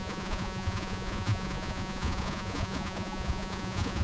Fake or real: fake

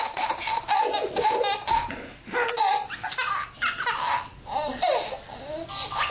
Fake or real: real